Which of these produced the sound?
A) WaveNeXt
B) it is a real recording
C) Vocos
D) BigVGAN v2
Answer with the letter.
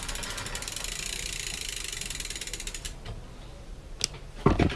B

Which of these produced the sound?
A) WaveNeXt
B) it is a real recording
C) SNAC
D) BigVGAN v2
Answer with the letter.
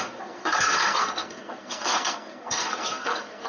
C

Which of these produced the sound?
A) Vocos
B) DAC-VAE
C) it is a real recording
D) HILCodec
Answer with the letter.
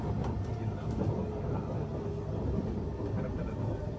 C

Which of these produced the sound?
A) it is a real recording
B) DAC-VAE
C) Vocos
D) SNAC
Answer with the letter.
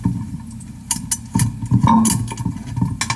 A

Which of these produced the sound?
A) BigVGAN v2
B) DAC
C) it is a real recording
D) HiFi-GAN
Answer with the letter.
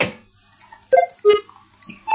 C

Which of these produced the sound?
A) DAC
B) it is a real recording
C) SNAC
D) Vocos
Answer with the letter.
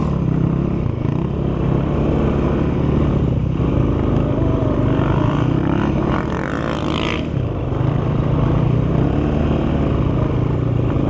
B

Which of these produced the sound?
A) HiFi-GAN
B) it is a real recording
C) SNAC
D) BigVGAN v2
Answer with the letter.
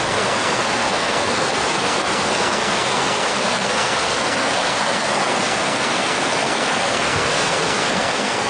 C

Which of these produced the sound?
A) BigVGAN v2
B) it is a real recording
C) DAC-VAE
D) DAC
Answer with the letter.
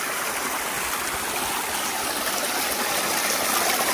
B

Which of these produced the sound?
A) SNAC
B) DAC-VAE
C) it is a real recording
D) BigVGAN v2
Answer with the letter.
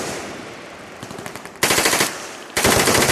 D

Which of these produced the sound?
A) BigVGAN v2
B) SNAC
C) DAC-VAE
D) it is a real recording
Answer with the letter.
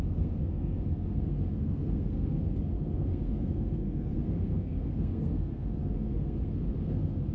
B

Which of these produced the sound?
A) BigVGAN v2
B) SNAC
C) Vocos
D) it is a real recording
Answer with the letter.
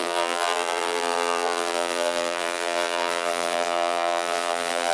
A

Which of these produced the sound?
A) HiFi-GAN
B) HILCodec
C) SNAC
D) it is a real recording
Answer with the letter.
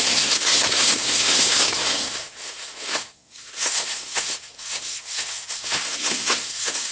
C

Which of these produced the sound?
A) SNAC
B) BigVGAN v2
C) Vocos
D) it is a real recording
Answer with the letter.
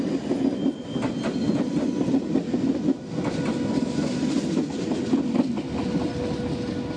D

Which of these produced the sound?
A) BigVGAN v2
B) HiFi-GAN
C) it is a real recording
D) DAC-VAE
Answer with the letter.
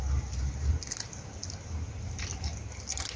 C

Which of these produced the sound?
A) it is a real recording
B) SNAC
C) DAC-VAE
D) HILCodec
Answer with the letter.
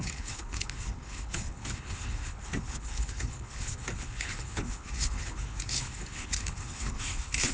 D